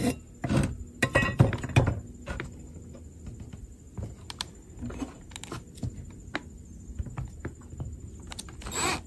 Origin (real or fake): real